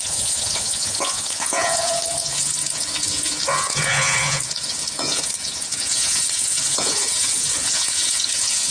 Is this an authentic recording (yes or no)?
no